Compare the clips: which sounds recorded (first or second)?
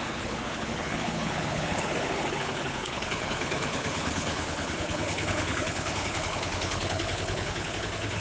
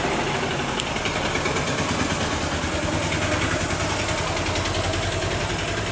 second